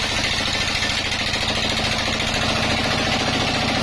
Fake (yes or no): no